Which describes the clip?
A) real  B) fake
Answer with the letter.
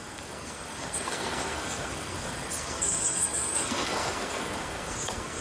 B